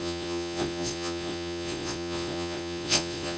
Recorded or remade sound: remade